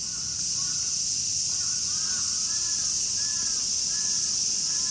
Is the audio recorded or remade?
recorded